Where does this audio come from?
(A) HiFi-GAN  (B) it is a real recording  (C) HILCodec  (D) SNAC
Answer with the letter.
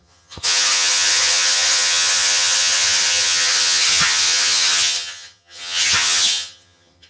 A